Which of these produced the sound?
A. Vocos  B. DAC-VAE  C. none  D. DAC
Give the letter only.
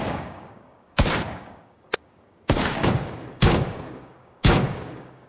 D